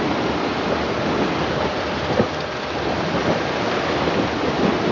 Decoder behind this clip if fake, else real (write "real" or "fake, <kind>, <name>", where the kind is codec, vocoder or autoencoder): real